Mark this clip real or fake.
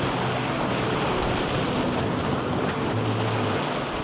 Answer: real